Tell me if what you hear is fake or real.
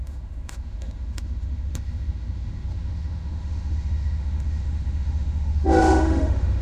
fake